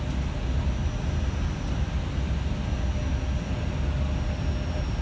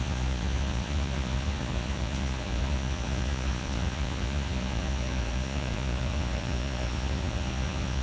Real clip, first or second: first